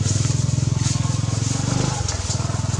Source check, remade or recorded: recorded